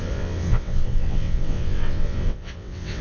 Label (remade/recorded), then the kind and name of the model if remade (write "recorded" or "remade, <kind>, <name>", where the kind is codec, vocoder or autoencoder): remade, vocoder, WaveNeXt